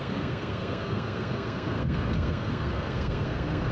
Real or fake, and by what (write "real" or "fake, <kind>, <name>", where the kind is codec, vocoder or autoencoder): fake, codec, SNAC